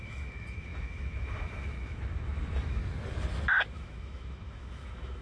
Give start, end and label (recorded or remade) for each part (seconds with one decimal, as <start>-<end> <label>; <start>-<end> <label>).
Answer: 0.0-2.8 remade; 2.8-3.7 recorded; 3.7-5.2 remade